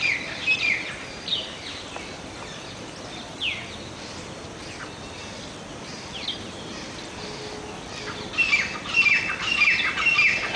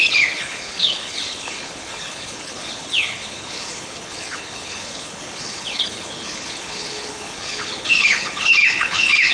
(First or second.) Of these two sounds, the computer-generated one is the second